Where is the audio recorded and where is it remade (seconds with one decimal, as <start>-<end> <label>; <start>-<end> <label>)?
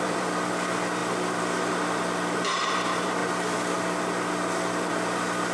0.0-3.2 remade; 3.2-4.9 recorded; 4.9-5.5 remade